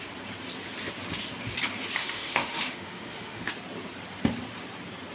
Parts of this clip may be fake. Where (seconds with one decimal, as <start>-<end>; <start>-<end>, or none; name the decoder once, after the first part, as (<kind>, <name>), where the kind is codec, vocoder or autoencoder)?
2.0-3.5 (autoencoder, DAC-VAE)